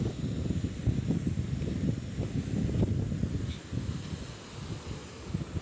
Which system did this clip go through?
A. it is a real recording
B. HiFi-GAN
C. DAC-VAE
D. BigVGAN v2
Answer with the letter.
A